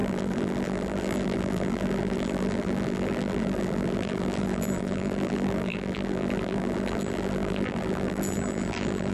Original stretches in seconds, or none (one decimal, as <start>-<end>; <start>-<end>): none